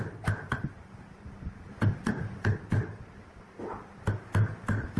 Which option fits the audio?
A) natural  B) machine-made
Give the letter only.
A